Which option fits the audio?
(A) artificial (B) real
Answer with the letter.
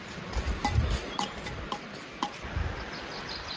B